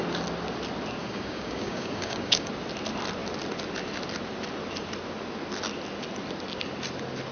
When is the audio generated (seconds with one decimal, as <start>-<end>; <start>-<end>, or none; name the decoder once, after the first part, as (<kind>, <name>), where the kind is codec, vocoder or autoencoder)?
1.0-2.5 (codec, DAC)